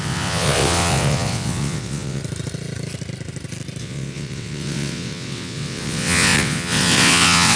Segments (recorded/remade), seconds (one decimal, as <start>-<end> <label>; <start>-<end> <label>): 0.0-2.2 remade; 2.2-3.8 recorded; 3.8-7.6 remade